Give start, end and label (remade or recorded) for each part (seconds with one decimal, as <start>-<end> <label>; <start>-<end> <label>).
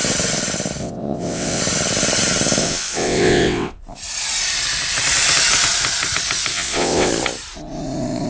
0.0-0.8 recorded; 0.8-1.6 remade; 1.6-2.6 recorded; 2.6-3.8 remade; 3.8-6.5 recorded; 6.5-7.1 remade; 7.1-8.3 recorded